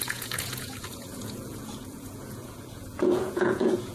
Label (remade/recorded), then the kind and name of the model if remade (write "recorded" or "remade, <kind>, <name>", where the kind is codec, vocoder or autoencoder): remade, vocoder, Vocos